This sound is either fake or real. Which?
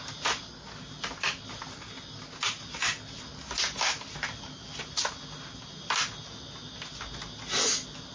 real